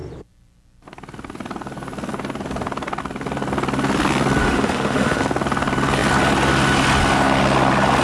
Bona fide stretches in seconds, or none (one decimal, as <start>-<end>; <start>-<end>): 0.0-4.4; 5.2-8.0